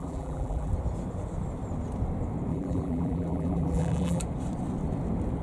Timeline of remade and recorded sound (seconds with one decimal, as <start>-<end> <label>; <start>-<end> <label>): 0.0-0.7 remade; 0.7-2.5 recorded; 2.5-4.2 remade; 4.2-5.4 recorded